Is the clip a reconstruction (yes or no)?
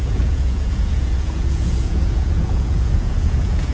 yes